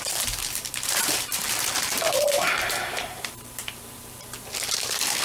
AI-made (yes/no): yes